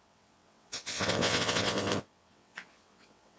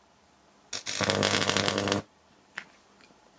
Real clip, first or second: second